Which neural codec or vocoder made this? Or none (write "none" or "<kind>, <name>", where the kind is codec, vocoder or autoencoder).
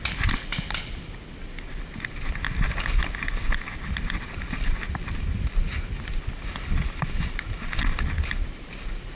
none